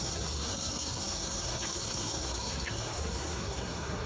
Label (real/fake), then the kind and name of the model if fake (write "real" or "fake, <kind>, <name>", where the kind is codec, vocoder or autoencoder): fake, codec, SNAC